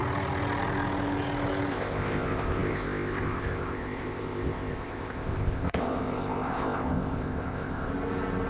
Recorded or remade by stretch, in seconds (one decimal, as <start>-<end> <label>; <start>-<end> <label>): 0.0-1.7 recorded; 1.7-7.9 remade; 7.9-8.5 recorded